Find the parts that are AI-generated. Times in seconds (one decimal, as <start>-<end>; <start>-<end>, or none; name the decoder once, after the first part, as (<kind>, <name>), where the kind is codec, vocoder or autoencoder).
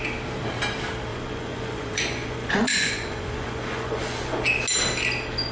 1.1-4.4 (vocoder, Vocos)